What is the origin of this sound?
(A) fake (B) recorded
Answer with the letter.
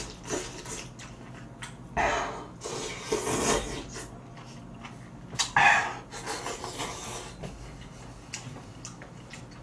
B